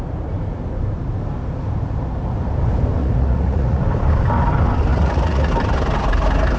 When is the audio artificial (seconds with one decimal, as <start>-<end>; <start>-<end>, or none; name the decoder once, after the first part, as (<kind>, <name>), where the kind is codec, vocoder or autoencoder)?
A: 3.0-3.8 (vocoder, Vocos); 4.9-5.5